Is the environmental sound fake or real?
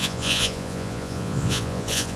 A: fake